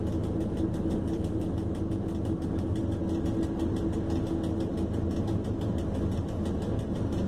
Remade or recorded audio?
recorded